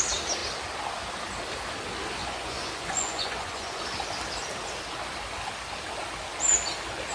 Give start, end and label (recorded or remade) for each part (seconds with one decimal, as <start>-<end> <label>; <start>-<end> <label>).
0.0-2.2 recorded; 2.2-3.8 remade; 3.8-7.1 recorded